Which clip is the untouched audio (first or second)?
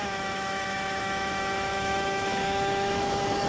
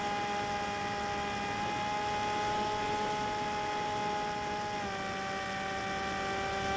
second